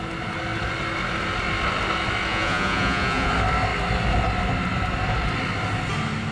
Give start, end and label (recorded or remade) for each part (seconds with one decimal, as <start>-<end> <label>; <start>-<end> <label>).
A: 0.0-2.3 recorded; 2.3-3.3 remade; 3.3-6.3 recorded